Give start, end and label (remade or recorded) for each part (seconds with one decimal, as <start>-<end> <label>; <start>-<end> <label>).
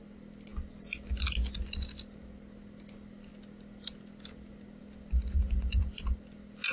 0.0-5.3 recorded; 5.3-5.8 remade; 5.8-6.7 recorded